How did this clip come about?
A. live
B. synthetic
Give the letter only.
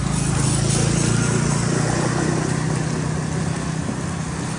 A